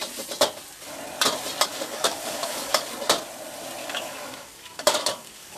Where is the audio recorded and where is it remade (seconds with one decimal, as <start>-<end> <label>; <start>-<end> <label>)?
0.0-1.7 recorded; 1.7-2.9 remade; 2.9-3.8 recorded; 3.8-5.6 remade